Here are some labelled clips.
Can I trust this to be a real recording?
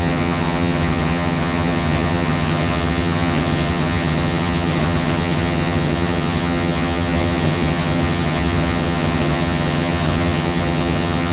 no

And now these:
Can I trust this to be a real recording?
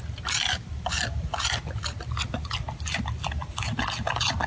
yes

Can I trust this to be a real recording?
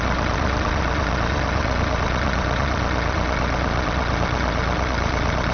no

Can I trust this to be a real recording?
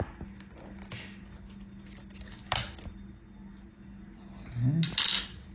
yes